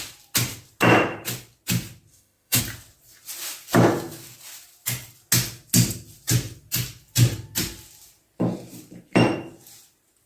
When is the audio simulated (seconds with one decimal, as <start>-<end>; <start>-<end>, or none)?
2.1-2.6